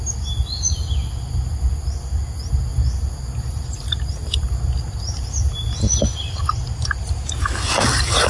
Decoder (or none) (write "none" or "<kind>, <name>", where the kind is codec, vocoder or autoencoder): none